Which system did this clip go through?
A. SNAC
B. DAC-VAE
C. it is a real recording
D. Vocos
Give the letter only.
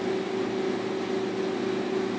C